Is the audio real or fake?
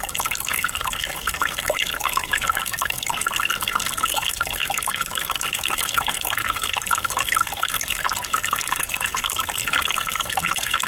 fake